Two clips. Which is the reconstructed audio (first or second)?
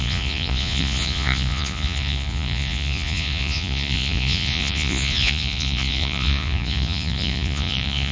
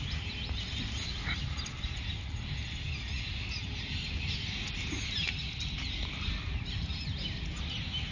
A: first